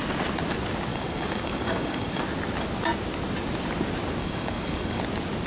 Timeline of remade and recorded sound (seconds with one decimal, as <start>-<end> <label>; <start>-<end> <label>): 0.0-0.9 recorded; 0.9-2.2 remade; 2.2-4.2 recorded; 4.2-5.0 remade; 5.0-5.5 recorded